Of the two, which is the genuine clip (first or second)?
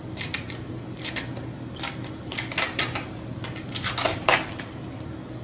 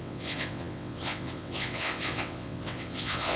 first